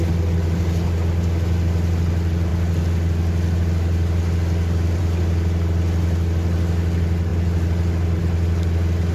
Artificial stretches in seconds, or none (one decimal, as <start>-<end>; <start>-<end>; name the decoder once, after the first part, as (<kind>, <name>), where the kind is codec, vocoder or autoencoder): none